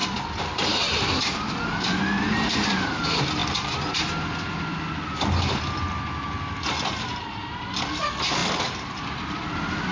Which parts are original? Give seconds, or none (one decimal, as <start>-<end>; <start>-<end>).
0.0-9.9